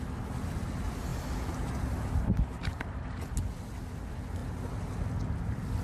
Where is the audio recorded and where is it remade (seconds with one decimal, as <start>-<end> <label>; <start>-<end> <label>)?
0.0-5.8 recorded